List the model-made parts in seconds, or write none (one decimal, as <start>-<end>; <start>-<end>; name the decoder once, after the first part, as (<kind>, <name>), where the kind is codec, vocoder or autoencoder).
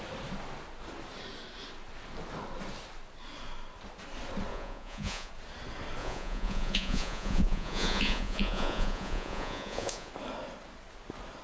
4.5-5.3 (vocoder, Vocos); 6.0-10.1